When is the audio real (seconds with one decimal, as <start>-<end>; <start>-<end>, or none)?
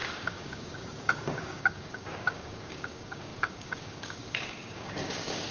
none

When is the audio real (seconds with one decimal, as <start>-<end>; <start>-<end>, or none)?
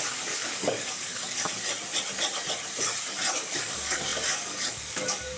1.5-3.3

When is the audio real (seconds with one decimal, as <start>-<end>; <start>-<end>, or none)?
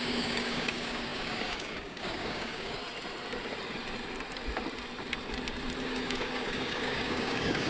2.8-5.8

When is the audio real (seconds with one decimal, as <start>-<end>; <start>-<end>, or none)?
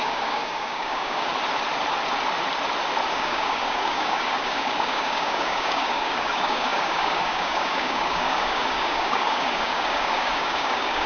1.3-3.1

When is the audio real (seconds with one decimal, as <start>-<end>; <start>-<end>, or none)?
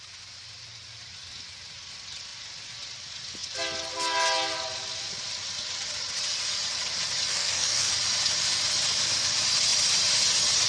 0.0-7.3; 7.9-10.7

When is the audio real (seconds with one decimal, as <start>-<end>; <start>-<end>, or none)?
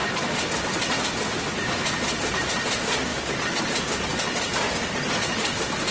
0.0-3.1; 3.6-5.9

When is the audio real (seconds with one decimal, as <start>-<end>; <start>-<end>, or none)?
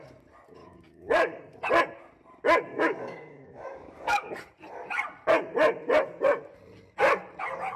0.0-0.6; 1.4-2.7; 4.3-7.8